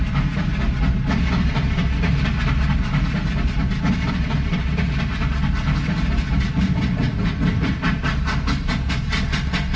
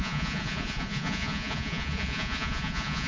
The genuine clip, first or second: first